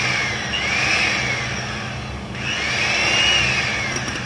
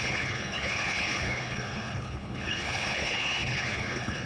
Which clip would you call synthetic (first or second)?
second